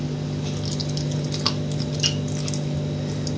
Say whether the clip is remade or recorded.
recorded